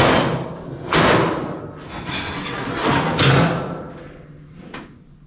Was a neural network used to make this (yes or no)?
no